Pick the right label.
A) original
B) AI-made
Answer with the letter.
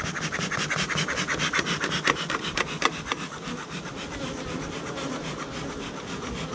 A